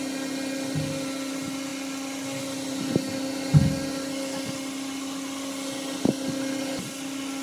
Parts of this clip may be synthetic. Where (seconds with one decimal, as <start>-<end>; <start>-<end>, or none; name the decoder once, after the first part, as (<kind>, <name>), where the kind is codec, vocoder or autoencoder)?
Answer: none